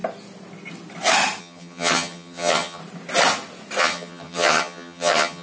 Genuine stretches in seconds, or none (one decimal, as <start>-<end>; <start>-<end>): 0.0-1.4; 2.8-3.8